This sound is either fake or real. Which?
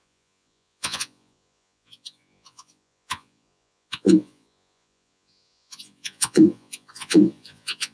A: fake